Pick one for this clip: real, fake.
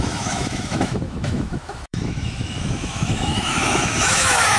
fake